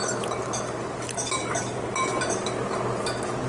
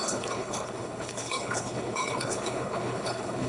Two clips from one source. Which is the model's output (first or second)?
second